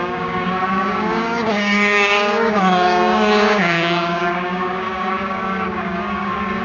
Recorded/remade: remade